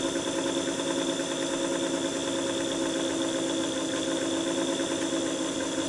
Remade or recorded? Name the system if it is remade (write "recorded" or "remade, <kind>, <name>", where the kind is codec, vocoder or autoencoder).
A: recorded